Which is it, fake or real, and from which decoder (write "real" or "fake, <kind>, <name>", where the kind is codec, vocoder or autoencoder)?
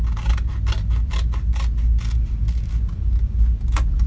real